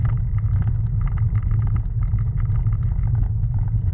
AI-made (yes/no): no